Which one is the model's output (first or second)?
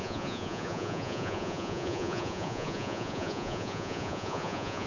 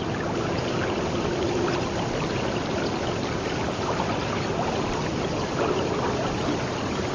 first